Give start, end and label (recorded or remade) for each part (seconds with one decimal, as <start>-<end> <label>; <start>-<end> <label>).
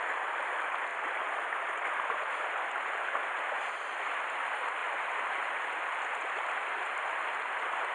0.0-7.9 recorded